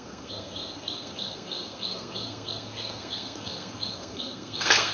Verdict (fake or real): fake